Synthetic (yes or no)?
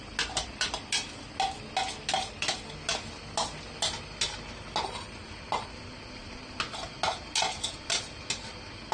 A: no